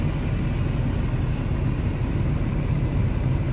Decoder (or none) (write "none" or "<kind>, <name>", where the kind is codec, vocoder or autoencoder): none